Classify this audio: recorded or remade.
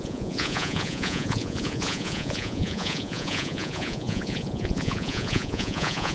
remade